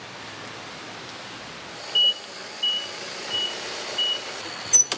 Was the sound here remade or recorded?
recorded